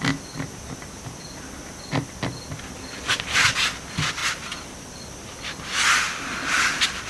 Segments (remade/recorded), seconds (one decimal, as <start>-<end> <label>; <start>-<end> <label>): 0.0-7.1 recorded